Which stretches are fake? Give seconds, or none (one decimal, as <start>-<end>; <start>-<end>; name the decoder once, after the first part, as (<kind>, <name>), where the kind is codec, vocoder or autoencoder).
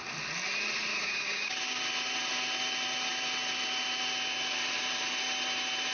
0.9-1.8 (codec, DAC)